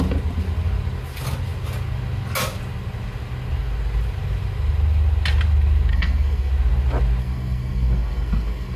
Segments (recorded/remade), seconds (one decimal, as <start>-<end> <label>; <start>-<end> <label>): 0.0-5.9 recorded; 5.9-6.5 remade; 6.5-7.2 recorded; 7.2-8.8 remade